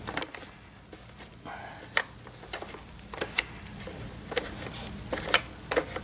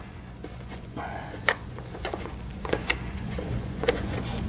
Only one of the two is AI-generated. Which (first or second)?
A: second